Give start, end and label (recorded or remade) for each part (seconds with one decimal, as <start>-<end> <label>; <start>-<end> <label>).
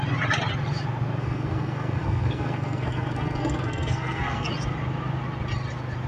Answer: 0.0-1.2 recorded; 1.2-4.5 remade; 4.5-6.1 recorded